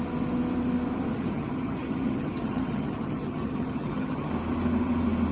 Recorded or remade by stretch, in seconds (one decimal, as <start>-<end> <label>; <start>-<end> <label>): 0.0-1.1 recorded; 1.1-4.3 remade; 4.3-5.3 recorded

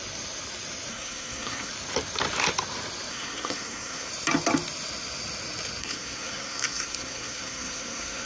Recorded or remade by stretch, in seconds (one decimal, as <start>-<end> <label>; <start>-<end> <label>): 0.0-0.9 recorded; 0.9-1.7 remade; 1.7-3.1 recorded; 3.1-4.1 remade; 4.1-5.8 recorded; 5.8-8.3 remade

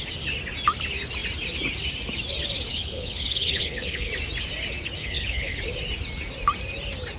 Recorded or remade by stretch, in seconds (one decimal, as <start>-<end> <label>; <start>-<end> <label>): 0.0-2.7 recorded; 2.7-4.1 remade; 4.1-5.0 recorded; 5.0-5.6 remade; 5.6-7.2 recorded